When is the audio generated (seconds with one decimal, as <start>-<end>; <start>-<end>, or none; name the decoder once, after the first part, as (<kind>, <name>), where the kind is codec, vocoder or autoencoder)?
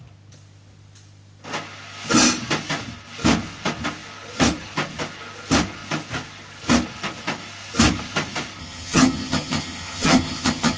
8.6-10.8 (vocoder, HiFi-GAN)